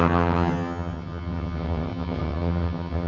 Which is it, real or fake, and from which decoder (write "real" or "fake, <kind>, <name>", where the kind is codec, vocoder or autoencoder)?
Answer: fake, vocoder, HiFi-GAN